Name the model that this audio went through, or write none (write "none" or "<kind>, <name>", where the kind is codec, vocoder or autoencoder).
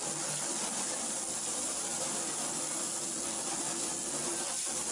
none